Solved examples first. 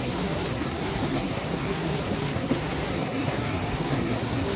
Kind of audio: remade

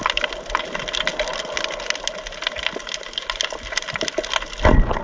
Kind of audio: recorded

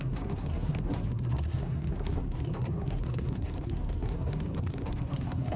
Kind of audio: remade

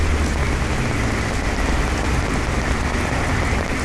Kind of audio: recorded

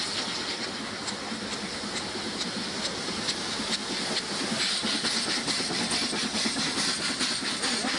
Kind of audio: recorded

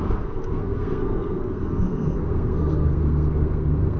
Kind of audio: remade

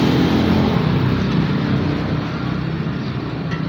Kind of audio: recorded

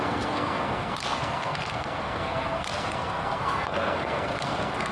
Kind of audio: remade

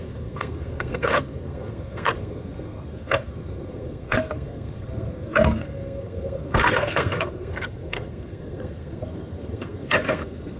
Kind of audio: remade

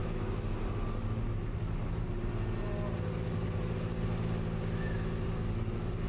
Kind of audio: recorded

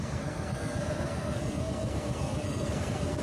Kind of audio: remade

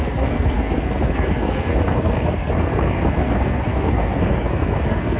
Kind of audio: remade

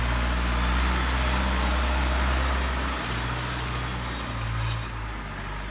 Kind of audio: recorded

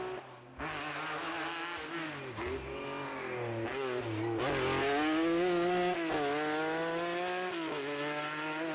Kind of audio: recorded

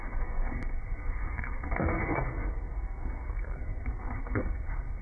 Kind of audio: remade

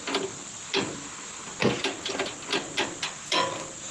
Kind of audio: recorded